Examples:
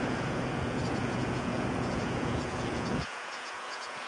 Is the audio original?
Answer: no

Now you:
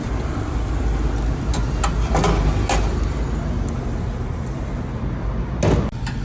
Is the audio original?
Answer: yes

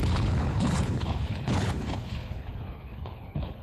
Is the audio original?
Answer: no